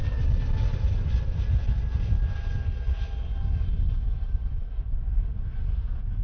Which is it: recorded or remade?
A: recorded